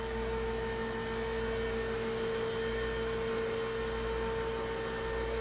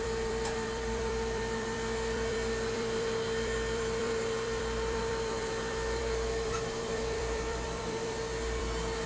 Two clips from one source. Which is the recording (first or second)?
first